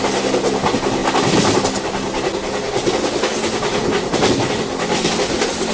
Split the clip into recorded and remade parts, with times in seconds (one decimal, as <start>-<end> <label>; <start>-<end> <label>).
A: 0.0-5.7 recorded